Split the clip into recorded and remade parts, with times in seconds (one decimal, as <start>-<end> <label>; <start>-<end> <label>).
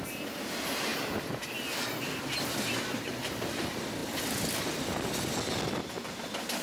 0.0-6.6 recorded